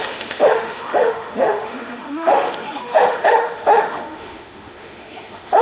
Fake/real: fake